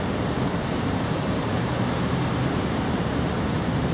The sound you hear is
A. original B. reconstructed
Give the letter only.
B